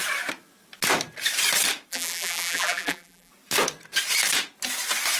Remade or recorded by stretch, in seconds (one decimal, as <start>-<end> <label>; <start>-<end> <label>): 0.0-1.9 recorded; 1.9-3.3 remade; 3.3-5.2 recorded